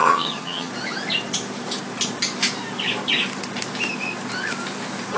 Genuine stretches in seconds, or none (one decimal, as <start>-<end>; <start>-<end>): 0.7-5.2

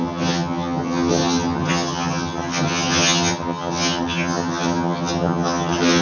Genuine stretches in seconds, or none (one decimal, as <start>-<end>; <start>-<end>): none